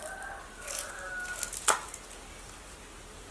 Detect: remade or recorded recorded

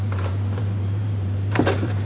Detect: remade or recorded remade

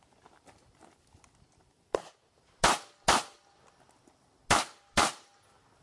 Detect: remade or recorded recorded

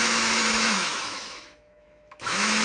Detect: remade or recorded remade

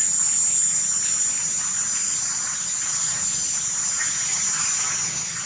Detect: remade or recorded recorded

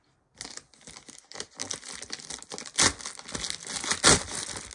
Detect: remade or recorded recorded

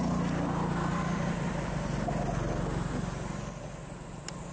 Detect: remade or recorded recorded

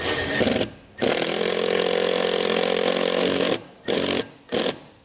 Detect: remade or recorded recorded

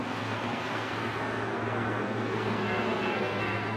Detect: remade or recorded remade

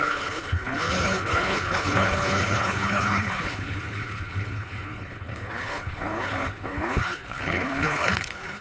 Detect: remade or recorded remade